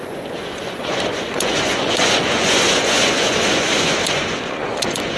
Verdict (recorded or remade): remade